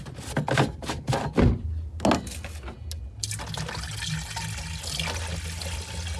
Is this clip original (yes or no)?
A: yes